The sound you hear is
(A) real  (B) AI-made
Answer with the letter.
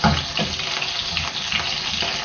A